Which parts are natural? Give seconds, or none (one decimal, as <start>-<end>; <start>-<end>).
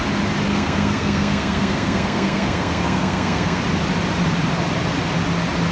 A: 0.0-0.5; 3.6-5.7